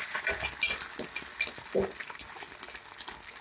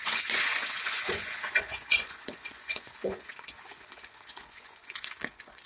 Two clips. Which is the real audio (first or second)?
first